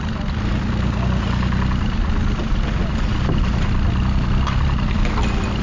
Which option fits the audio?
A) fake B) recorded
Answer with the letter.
B